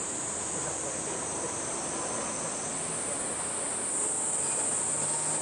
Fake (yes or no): no